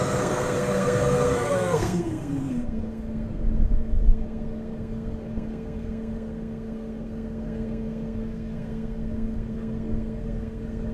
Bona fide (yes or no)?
no